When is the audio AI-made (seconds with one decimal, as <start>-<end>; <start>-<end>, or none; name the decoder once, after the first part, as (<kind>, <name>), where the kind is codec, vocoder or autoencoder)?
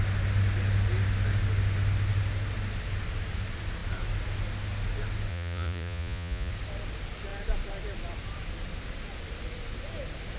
5.3-6.5 (vocoder, Vocos)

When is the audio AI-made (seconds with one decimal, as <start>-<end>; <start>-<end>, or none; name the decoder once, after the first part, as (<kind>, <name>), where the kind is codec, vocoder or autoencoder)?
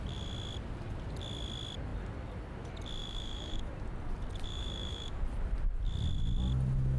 3.0-3.7 (autoencoder, DAC-VAE); 4.5-5.2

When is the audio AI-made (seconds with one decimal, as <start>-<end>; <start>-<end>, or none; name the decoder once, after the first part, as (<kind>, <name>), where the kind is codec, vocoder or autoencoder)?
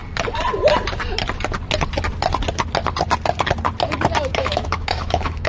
4.3-5.5 (autoencoder, DAC-VAE)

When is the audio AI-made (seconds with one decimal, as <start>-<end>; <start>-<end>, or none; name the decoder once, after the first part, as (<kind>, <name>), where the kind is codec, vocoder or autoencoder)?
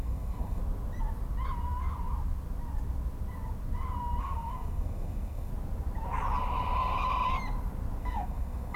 0.0-0.6 (codec, SNAC); 4.2-5.5; 8.0-8.8